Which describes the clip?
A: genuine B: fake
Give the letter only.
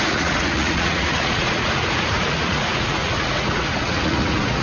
B